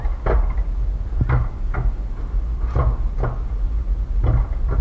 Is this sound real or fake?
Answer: real